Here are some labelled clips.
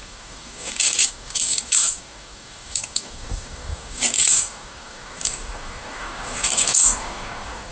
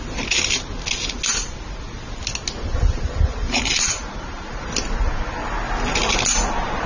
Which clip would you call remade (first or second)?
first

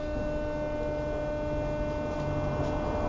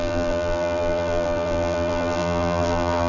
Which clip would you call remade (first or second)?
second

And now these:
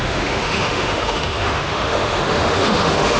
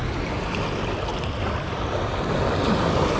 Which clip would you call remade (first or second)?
first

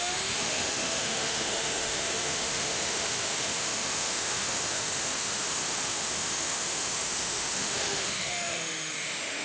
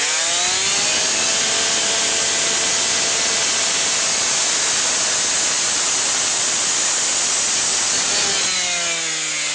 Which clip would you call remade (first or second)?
first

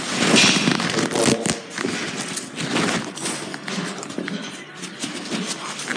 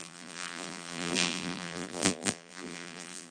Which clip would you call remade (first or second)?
second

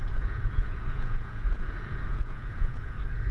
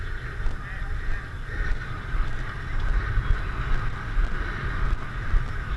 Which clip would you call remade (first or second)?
first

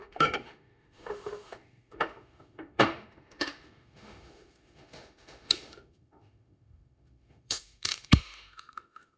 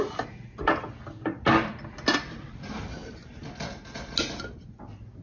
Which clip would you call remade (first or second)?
first